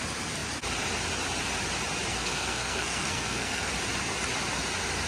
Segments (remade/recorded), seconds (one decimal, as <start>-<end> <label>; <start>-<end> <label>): 0.0-2.1 recorded; 2.1-3.7 remade; 3.7-5.1 recorded

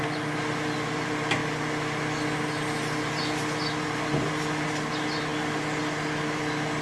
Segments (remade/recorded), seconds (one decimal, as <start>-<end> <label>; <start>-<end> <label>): 0.0-6.8 recorded